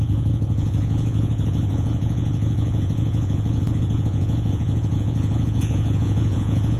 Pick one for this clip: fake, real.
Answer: fake